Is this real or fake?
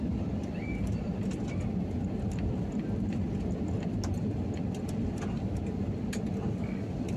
real